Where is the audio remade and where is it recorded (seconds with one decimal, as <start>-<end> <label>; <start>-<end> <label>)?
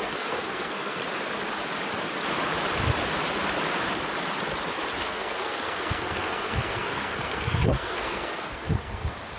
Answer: 0.0-1.0 remade; 1.0-5.0 recorded; 5.0-9.4 remade